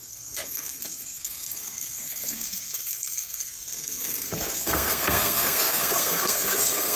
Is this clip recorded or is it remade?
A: remade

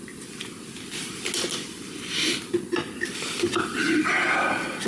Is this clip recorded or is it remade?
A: recorded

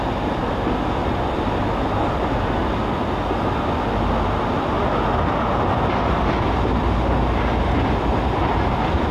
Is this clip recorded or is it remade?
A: recorded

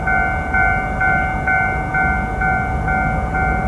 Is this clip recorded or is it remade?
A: recorded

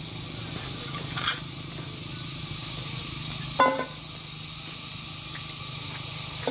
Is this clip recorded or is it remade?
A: recorded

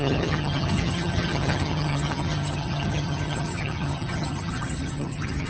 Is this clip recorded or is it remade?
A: remade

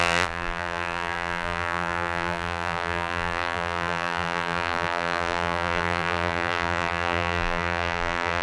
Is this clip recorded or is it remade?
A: remade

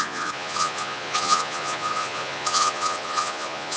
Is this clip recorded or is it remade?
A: remade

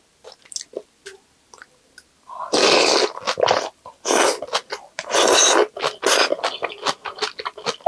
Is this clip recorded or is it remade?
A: recorded